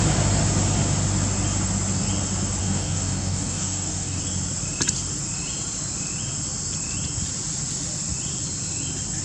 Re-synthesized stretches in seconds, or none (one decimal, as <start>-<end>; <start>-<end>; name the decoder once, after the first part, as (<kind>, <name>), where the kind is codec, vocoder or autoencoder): 2.6-4.2 (codec, DAC)